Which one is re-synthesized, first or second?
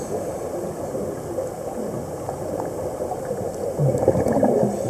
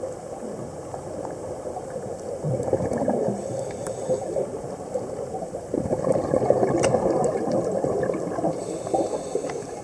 second